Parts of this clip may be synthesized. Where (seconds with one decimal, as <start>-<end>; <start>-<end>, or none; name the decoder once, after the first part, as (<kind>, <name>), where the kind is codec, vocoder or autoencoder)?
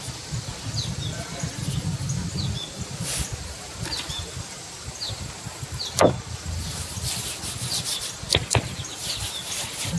none